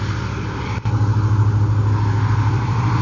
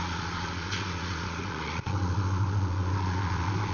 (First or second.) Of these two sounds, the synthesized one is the second